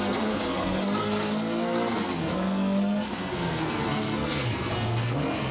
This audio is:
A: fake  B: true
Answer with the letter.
A